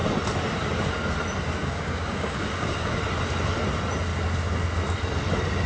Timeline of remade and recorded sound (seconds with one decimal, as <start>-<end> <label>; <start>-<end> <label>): 0.0-1.6 recorded; 1.6-3.0 remade; 3.0-5.7 recorded